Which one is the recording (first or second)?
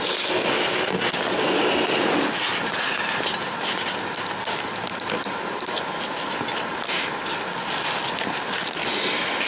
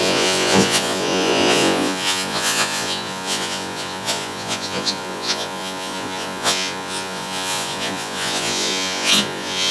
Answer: first